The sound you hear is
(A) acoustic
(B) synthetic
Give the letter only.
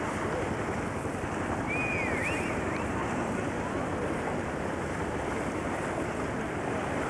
A